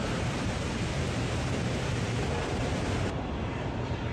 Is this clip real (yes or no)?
no